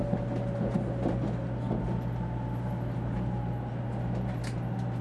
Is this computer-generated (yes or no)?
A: no